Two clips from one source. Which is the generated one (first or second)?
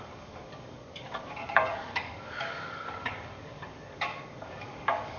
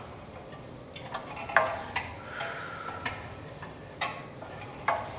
first